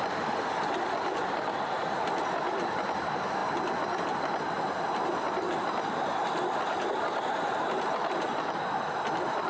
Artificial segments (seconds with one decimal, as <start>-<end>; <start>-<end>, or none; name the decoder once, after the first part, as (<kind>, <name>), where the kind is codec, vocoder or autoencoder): none